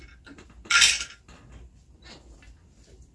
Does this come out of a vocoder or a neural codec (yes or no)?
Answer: no